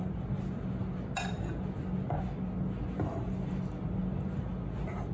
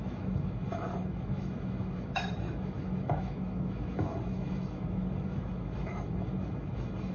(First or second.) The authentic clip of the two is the first